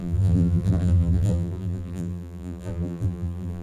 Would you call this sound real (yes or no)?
no